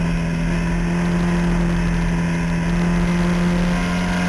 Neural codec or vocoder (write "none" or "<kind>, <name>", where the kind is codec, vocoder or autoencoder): none